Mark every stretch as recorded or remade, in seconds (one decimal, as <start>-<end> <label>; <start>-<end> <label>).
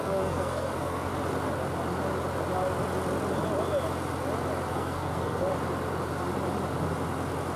0.0-1.1 remade; 1.1-4.7 recorded; 4.7-5.5 remade; 5.5-7.6 recorded